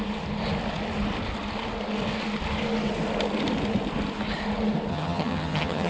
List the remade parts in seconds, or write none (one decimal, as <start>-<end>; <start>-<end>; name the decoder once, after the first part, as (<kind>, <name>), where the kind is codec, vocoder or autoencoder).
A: 4.9-5.9 (vocoder, HiFi-GAN)